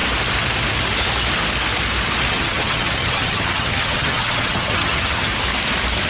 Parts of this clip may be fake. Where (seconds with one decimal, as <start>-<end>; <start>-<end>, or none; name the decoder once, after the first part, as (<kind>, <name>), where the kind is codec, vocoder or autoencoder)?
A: 2.3-5.3 (vocoder, HiFi-GAN)